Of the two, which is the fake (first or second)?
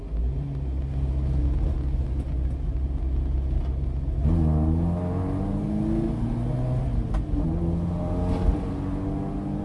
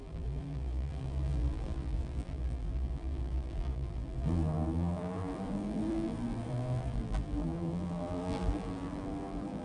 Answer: second